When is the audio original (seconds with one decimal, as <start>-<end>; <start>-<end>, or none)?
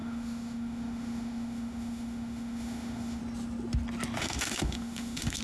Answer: 3.2-4.2